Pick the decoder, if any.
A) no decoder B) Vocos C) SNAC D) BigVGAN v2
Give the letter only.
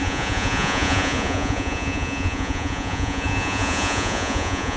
B